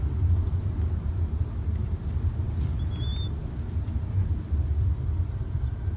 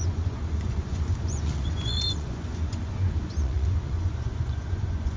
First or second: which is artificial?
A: second